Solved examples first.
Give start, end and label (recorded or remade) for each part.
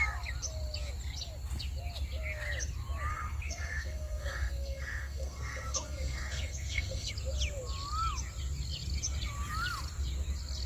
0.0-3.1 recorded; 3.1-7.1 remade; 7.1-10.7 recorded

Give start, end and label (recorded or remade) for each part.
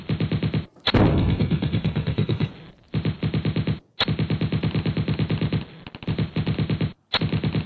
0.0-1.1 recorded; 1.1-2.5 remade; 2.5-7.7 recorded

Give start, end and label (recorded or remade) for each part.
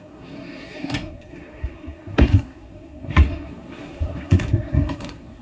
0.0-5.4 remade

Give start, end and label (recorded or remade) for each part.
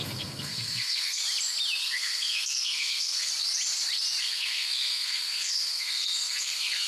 0.0-1.2 remade; 1.2-1.8 recorded; 1.8-3.3 remade; 3.3-4.2 recorded; 4.2-6.9 remade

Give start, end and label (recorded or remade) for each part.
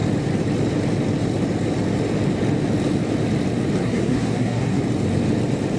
0.0-3.8 recorded; 3.8-4.8 remade; 4.8-5.8 recorded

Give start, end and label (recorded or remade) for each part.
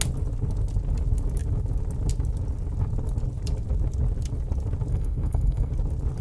0.0-4.9 recorded; 4.9-5.7 remade; 5.7-6.2 recorded